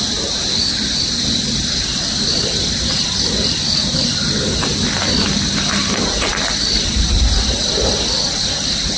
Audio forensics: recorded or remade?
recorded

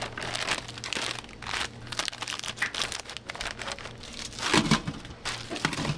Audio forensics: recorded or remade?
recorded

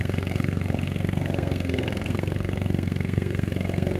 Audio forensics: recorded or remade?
remade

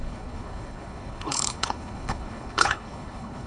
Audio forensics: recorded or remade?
remade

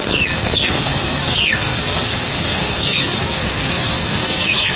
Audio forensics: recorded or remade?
remade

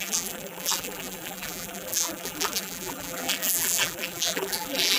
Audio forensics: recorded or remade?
remade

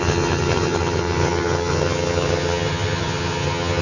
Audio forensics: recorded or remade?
remade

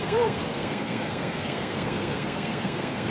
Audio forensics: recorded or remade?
remade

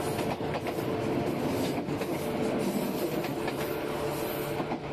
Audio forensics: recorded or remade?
recorded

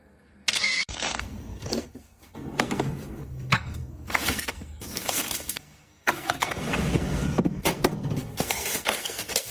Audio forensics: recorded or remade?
remade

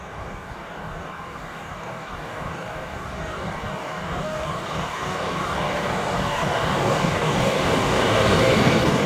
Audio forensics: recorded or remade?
remade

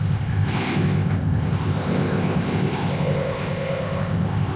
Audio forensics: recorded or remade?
remade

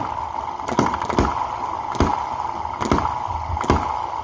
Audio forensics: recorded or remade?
recorded